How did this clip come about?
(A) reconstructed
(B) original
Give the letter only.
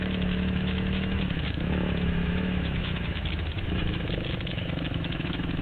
A